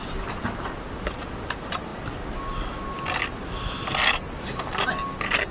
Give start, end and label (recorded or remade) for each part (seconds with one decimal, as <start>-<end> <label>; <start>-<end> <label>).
0.0-5.5 recorded